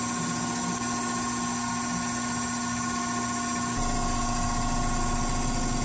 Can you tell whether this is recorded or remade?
recorded